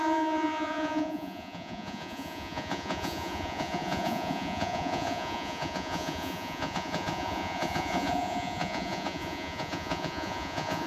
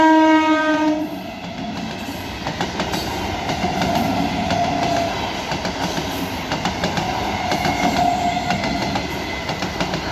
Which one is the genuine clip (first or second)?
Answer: second